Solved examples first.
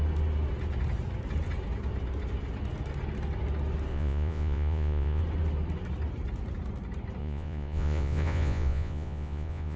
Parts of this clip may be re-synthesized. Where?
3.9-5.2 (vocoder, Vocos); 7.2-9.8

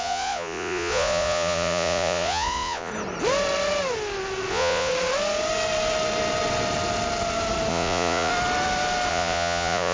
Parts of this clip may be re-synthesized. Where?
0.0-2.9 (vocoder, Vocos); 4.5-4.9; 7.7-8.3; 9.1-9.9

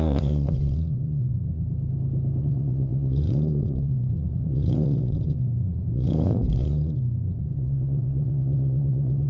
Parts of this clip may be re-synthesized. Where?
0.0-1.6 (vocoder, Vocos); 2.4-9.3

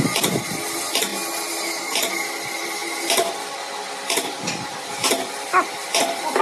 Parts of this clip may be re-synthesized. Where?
none